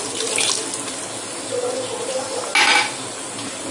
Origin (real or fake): real